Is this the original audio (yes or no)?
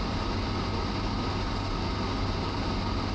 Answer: yes